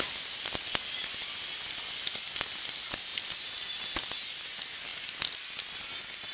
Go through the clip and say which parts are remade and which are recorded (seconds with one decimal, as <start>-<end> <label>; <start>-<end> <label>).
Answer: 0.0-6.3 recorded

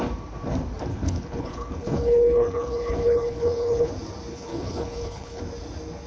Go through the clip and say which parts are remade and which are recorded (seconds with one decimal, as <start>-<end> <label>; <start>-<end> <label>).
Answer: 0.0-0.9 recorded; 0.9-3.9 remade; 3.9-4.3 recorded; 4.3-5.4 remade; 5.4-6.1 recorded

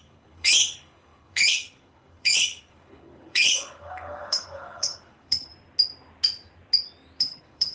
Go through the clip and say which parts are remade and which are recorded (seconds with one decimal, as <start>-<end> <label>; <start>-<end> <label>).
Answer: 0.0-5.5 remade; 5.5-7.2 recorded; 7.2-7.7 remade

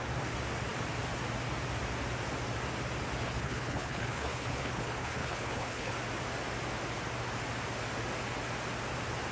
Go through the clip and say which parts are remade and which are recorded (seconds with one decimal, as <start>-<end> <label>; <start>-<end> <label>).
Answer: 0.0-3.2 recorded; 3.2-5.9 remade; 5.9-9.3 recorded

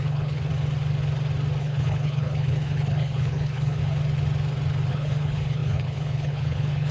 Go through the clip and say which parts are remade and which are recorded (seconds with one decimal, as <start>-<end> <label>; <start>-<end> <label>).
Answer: 0.0-0.5 remade; 0.5-1.6 recorded; 1.6-3.8 remade; 3.8-4.9 recorded; 4.9-6.9 remade

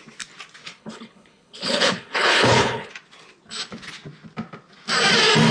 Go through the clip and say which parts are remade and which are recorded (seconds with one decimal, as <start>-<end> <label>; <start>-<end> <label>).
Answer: 0.0-0.6 recorded; 0.6-2.9 remade; 2.9-5.5 recorded